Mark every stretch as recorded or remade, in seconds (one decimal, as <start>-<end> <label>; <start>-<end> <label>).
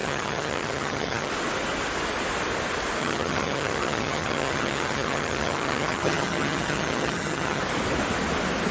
0.0-1.3 remade; 1.3-3.0 recorded; 3.0-7.6 remade; 7.6-8.7 recorded